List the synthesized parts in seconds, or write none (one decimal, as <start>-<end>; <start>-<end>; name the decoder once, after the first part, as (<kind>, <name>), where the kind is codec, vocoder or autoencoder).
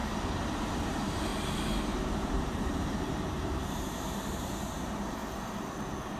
0.0-1.3 (vocoder, BigVGAN v2); 1.8-5.2